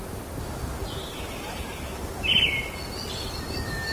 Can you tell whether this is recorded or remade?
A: recorded